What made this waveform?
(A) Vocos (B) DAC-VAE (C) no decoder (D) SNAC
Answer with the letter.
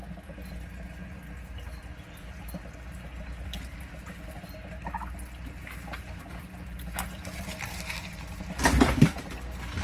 C